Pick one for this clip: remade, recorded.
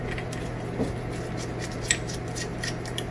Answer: recorded